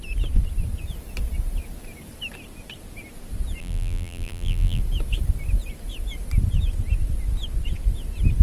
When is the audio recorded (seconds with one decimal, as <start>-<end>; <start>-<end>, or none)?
0.0-3.6; 4.8-8.4